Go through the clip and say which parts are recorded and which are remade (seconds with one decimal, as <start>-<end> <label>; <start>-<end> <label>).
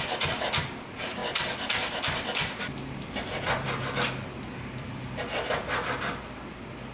0.0-6.9 recorded